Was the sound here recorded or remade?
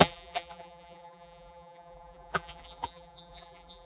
remade